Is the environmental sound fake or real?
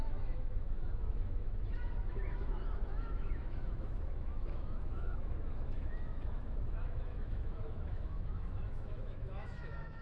fake